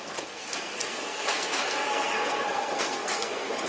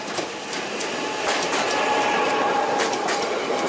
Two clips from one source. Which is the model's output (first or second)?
first